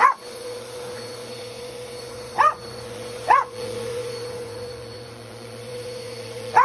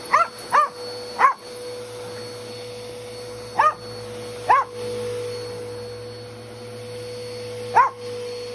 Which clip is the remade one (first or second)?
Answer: first